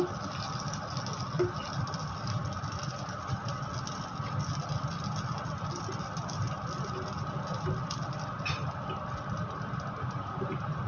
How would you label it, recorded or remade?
recorded